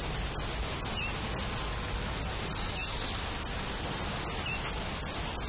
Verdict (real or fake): real